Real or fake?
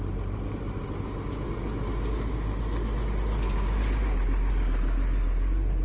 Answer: real